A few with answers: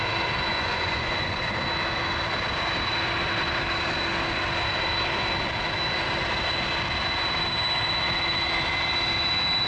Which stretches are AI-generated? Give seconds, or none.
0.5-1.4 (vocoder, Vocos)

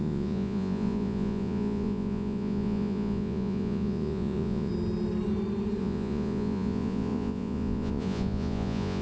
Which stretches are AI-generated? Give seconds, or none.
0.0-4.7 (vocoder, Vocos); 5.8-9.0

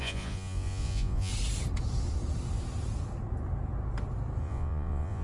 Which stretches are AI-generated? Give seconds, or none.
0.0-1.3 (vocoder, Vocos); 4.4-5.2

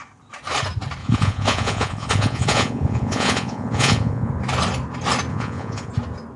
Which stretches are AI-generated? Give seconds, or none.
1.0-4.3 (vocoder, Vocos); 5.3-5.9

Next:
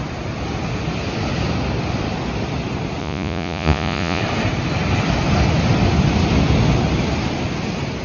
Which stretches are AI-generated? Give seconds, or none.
3.0-4.2 (vocoder, Vocos)